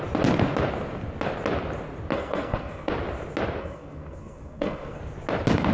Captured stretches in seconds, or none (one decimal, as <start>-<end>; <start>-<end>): 0.0-2.1; 2.9-3.6; 5.0-5.7